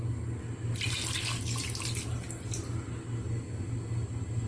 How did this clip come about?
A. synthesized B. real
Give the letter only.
B